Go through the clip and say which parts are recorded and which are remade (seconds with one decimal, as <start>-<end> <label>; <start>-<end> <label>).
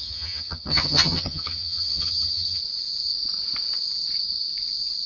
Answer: 0.0-2.6 remade; 2.6-5.1 recorded